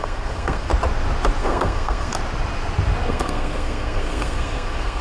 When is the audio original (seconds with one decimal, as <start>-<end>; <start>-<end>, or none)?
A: 0.7-1.4; 2.1-3.1